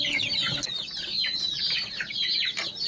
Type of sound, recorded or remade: recorded